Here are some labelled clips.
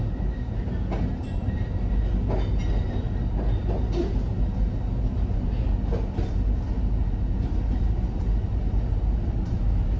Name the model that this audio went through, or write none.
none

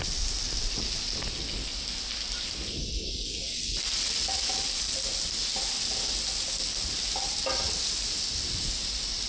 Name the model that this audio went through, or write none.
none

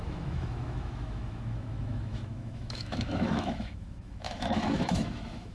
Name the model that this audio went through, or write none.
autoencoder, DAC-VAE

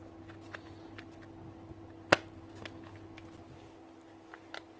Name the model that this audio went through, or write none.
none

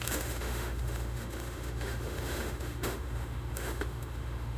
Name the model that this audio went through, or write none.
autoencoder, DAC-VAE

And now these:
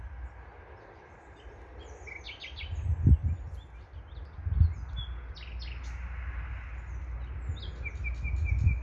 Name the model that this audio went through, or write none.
none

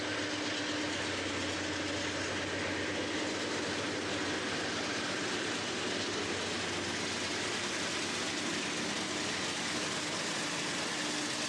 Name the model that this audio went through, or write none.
none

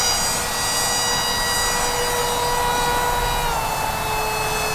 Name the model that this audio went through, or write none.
none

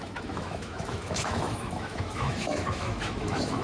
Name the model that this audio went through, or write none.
autoencoder, DAC-VAE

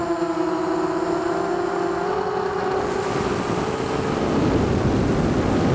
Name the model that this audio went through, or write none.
none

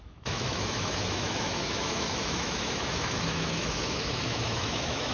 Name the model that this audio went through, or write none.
autoencoder, DAC-VAE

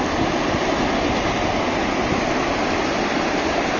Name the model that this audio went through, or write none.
none